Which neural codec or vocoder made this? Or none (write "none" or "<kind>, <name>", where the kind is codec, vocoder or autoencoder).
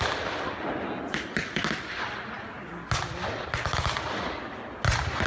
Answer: none